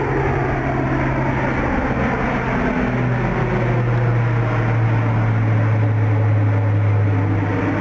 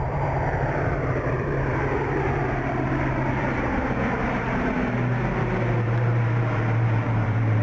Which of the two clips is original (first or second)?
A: first